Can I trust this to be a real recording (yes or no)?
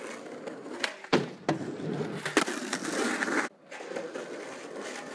yes